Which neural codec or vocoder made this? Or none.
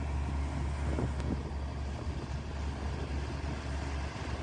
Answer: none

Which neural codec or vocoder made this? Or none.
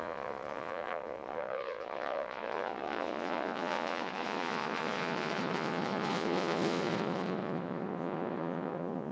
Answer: vocoder, Vocos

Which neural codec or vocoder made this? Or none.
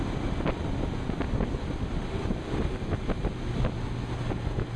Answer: none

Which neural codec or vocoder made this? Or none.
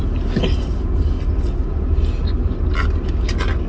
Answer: none